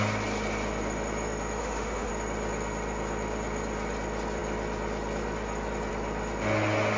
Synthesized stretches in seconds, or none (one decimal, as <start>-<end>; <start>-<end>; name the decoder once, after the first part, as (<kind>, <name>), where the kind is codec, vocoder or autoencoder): 1.6-2.1 (autoencoder, DAC-VAE)

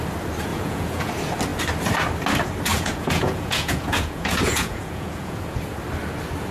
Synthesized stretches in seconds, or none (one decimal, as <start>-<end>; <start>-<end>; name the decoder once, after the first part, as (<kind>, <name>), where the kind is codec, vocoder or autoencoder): 0.5-1.1 (vocoder, Vocos); 2.7-5.6

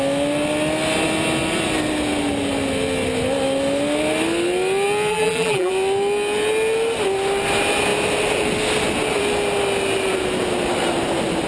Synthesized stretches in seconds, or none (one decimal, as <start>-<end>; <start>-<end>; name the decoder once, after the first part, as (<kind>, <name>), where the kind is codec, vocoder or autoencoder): 5.1-5.7 (vocoder, BigVGAN v2)

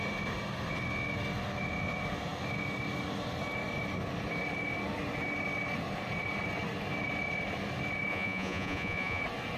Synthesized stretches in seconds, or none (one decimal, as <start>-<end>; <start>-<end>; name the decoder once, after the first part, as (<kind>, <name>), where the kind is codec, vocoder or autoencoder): 8.1-9.2 (vocoder, Vocos)